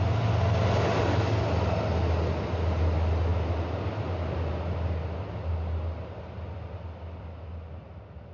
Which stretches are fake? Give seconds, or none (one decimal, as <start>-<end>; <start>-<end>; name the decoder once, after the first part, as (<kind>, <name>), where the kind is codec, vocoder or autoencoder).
none